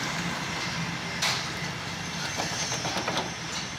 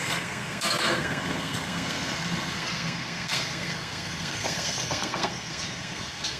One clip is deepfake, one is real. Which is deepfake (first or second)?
second